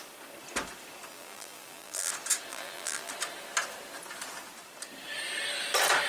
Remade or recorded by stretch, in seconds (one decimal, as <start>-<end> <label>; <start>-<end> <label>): 0.0-1.1 recorded; 1.1-2.1 remade; 2.1-2.5 recorded; 2.5-3.1 remade; 3.1-6.1 recorded